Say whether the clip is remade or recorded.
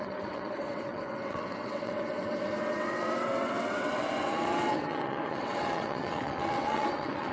remade